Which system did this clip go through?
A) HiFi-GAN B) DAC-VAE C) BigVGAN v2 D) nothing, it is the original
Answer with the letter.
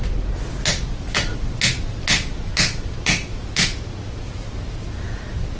D